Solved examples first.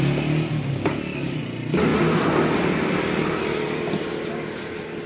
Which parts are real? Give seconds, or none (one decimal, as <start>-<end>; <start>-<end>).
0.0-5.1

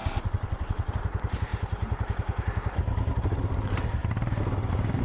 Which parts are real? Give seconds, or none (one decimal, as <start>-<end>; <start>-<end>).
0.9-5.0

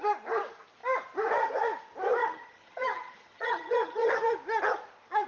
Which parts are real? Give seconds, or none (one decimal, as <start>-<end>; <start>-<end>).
0.0-2.2; 4.1-5.3